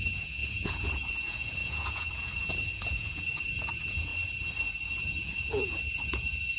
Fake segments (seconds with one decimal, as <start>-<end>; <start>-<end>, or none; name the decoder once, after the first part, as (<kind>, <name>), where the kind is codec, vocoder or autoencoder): 0.0-4.1 (vocoder, Vocos); 4.9-6.6

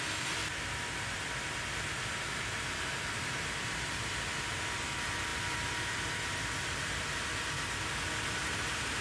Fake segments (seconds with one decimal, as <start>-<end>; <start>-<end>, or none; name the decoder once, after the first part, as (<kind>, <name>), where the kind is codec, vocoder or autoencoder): none

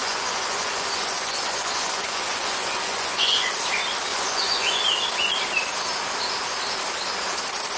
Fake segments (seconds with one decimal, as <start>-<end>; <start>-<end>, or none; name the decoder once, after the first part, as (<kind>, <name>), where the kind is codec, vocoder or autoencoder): 0.0-3.5 (vocoder, Vocos); 4.1-4.8

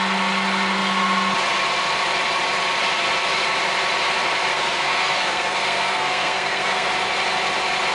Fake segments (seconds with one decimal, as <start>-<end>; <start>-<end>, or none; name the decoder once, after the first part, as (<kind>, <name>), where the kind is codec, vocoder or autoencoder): 4.5-6.9 (codec, SNAC)

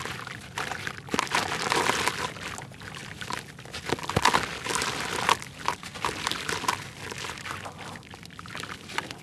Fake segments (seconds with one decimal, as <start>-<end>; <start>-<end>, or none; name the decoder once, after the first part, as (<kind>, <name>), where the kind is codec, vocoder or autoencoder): none

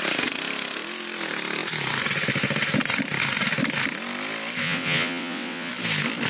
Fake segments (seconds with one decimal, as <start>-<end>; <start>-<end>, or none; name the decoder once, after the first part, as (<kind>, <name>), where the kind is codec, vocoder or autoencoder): 4.6-5.7 (vocoder, WaveNeXt)